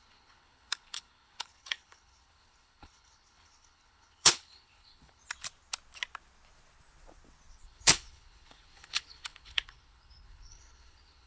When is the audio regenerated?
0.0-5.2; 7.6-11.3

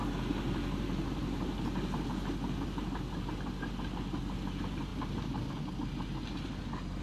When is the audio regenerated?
none

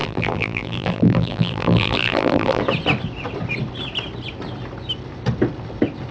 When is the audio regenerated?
0.0-2.6

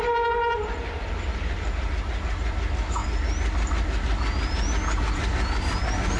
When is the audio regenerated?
1.3-1.9

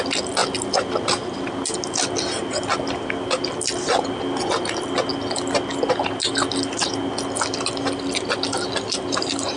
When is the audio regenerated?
none

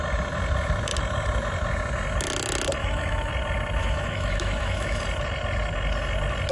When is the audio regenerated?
2.8-3.3; 3.8-5.0

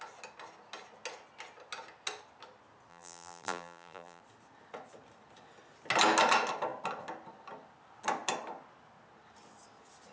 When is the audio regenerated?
2.9-4.2

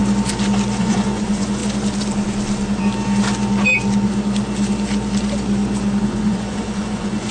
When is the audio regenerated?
0.8-1.6; 6.0-7.3